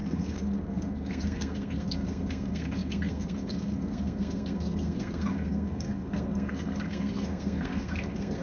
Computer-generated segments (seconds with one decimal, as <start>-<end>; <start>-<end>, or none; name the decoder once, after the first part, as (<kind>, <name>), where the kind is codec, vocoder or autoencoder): 0.0-8.4 (codec, SNAC)